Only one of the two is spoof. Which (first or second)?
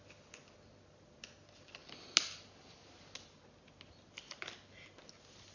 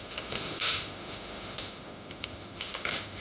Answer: second